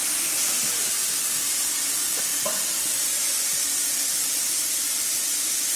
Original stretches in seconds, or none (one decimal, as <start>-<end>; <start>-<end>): 0.0-5.8